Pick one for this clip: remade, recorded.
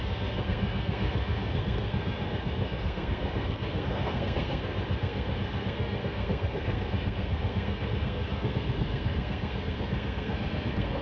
remade